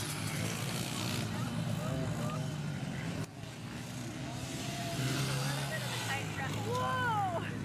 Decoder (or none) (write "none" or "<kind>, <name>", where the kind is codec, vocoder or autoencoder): none